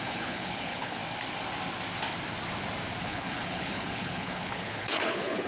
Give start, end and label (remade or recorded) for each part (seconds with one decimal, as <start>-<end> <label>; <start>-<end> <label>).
0.0-1.0 remade; 1.0-3.0 recorded; 3.0-5.5 remade